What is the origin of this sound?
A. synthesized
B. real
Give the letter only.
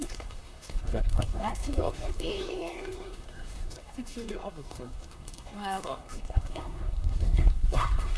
A